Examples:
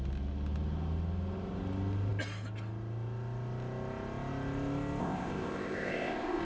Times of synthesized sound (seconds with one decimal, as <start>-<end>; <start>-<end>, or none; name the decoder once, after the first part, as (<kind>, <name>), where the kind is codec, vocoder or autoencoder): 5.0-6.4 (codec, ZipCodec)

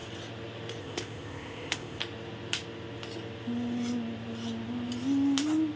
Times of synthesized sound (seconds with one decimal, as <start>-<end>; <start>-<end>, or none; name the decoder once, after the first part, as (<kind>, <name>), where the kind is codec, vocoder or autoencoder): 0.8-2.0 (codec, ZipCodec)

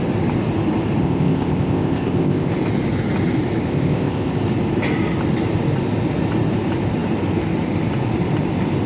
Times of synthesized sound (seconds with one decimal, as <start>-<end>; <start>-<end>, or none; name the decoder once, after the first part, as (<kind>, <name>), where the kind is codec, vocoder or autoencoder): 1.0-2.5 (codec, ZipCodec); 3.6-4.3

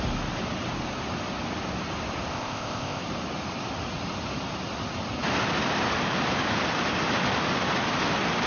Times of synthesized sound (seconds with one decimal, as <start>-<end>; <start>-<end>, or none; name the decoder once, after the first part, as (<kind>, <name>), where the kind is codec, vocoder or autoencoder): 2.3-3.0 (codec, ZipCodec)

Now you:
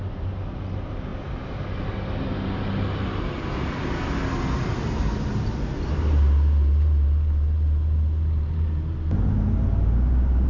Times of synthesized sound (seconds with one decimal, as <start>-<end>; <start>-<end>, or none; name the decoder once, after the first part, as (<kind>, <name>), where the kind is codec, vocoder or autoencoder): none

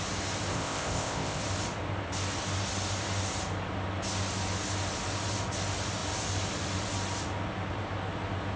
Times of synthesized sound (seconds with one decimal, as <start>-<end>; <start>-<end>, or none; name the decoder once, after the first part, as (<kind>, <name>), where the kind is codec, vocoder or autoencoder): 0.5-1.4 (codec, ZipCodec)

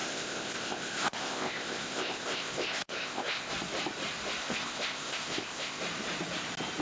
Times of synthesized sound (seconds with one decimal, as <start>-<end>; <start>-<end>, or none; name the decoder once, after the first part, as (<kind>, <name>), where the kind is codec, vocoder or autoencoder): 0.0-3.5 (codec, ZipCodec); 4.4-5.8

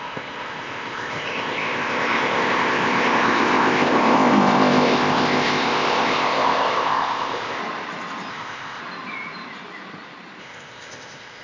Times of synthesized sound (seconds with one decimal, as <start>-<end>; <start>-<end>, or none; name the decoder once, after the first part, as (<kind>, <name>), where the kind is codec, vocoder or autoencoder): 0.0-7.6 (codec, ZipCodec); 8.3-8.8; 10.4-11.4